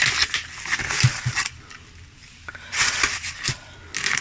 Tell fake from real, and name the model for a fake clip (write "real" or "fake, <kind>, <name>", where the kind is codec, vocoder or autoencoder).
real